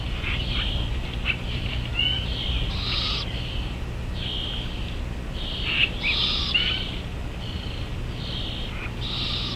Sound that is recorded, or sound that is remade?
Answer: recorded